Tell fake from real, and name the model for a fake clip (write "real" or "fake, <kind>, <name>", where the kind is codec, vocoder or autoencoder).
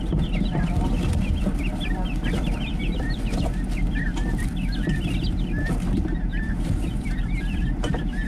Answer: fake, vocoder, BigVGAN v2